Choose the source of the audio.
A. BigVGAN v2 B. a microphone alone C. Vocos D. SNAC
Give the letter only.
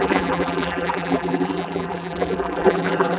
A